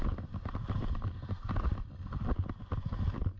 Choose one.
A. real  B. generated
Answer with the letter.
A